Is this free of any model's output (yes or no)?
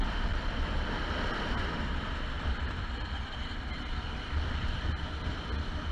no